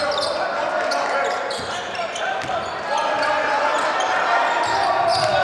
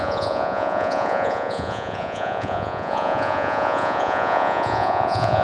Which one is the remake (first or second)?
second